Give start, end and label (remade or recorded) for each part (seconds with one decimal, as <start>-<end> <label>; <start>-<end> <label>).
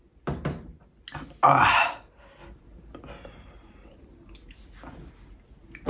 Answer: 0.0-5.9 recorded